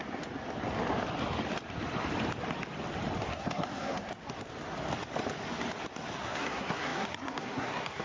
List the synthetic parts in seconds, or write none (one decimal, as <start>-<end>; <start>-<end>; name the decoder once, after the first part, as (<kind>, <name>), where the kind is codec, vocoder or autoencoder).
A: 3.3-4.1 (codec, SNAC); 6.2-8.0